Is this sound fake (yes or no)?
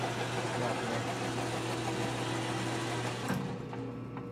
no